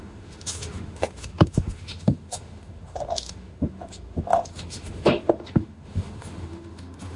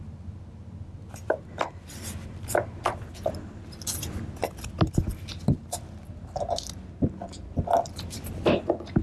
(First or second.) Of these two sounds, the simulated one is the first